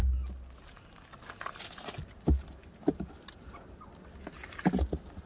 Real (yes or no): yes